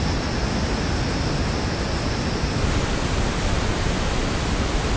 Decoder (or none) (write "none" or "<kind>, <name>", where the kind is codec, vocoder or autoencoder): none